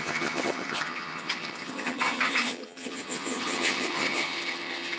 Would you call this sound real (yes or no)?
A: no